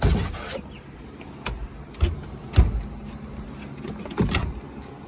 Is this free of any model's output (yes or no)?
yes